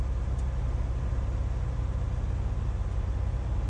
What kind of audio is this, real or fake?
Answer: real